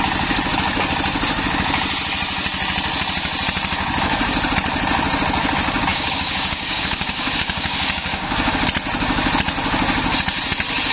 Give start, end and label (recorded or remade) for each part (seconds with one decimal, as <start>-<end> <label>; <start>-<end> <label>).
0.0-5.9 recorded; 5.9-8.5 remade; 8.5-10.9 recorded